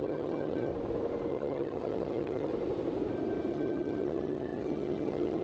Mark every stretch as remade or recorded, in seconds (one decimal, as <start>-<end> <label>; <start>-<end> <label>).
0.0-0.7 remade; 0.7-1.3 recorded; 1.3-2.5 remade; 2.5-3.5 recorded; 3.5-5.4 remade